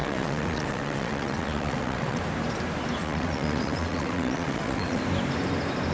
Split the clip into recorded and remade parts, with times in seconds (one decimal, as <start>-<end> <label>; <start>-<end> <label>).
0.0-2.2 remade; 2.2-3.0 recorded; 3.0-5.0 remade; 5.0-5.9 recorded